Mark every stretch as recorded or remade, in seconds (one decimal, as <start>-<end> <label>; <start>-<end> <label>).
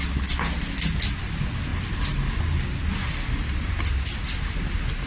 0.0-5.1 recorded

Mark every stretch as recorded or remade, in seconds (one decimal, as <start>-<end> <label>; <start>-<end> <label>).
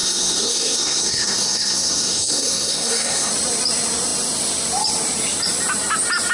0.0-3.3 remade; 3.3-6.3 recorded